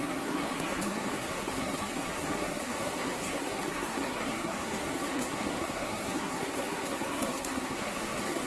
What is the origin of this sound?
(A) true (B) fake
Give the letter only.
B